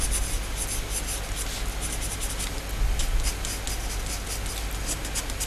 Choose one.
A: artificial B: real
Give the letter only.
B